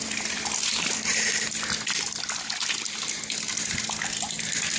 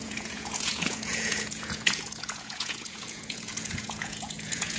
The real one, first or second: first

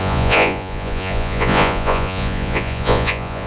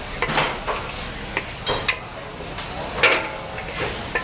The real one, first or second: second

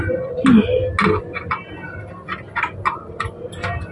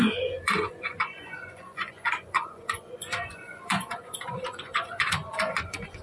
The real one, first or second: first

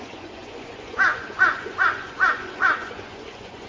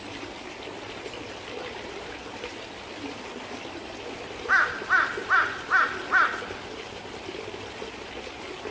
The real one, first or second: second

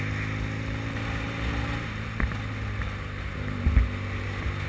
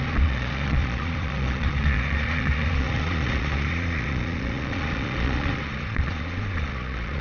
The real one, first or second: first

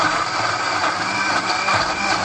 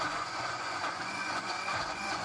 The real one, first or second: first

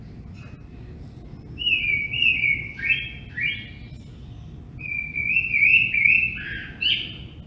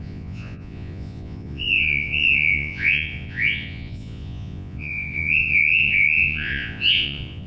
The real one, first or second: first